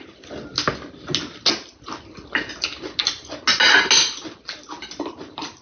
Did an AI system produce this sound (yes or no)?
no